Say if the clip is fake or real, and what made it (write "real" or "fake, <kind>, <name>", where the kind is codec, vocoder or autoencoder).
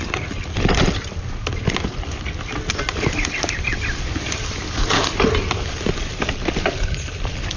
real